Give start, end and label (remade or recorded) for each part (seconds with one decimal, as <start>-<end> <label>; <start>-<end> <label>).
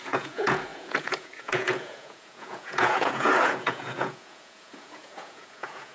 0.0-5.9 remade